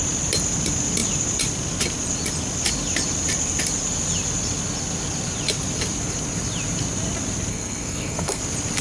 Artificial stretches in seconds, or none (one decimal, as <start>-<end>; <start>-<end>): 7.5-8.4